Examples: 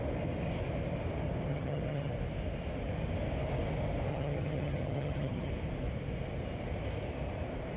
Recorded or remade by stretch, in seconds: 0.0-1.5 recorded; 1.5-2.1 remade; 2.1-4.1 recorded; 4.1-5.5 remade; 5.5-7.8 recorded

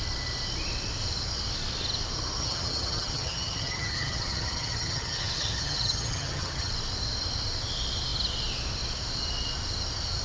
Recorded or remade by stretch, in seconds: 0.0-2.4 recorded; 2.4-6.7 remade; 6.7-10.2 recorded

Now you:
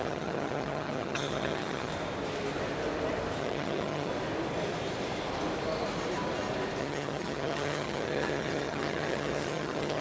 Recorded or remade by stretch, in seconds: 0.0-1.9 remade; 1.9-3.4 recorded; 3.4-4.1 remade; 4.1-6.8 recorded; 6.8-10.0 remade